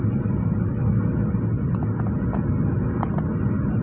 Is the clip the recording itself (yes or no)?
yes